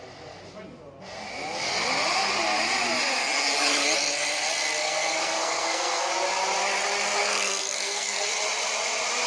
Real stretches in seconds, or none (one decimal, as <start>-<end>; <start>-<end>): 0.0-4.8; 6.1-7.2; 8.3-9.3